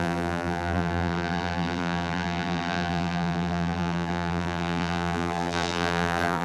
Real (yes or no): no